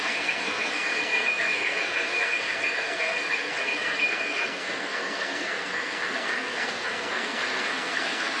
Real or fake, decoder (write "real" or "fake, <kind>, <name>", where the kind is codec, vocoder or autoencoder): fake, codec, SNAC